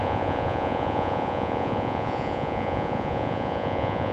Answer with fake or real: fake